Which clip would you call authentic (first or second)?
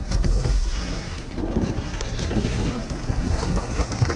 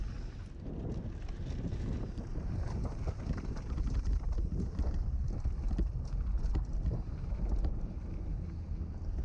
second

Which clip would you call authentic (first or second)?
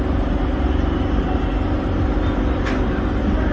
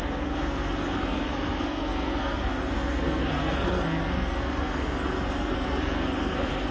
first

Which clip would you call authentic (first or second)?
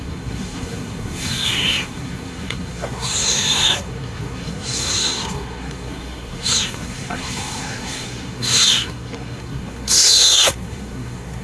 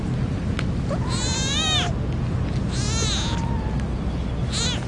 second